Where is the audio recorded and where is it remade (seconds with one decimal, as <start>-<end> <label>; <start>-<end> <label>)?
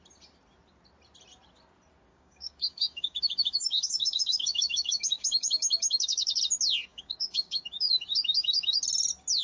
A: 0.0-2.1 recorded; 2.1-6.4 remade; 6.4-6.9 recorded; 6.9-8.8 remade; 8.8-9.4 recorded